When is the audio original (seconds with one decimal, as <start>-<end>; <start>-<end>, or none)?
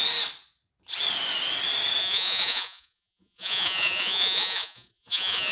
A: 0.0-2.0